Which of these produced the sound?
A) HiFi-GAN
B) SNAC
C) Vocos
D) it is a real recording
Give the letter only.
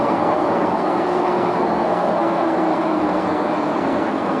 B